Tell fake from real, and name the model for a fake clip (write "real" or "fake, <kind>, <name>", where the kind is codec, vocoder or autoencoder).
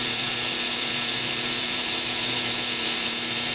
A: fake, vocoder, BigVGAN v2